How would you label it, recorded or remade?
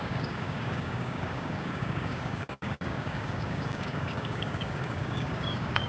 remade